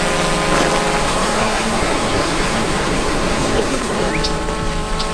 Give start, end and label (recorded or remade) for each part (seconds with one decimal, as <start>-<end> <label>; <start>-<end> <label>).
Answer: 0.0-1.0 recorded; 1.0-4.1 remade; 4.1-5.1 recorded